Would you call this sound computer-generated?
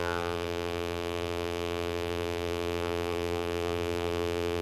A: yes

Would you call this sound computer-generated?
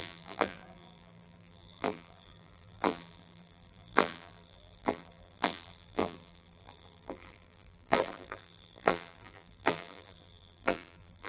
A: yes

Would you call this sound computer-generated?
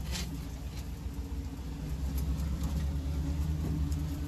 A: no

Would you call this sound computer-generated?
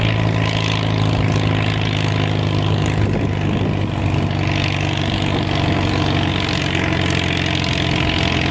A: no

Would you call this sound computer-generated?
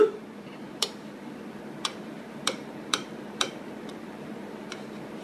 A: yes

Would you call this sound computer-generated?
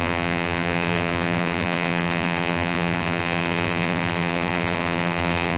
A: yes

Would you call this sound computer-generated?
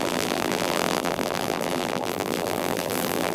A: yes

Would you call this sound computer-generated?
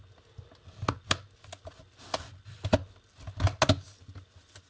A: no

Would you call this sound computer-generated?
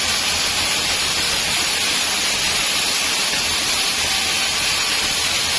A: no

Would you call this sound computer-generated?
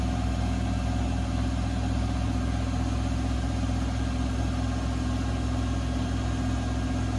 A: no